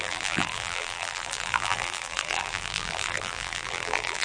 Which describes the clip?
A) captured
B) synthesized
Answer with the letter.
B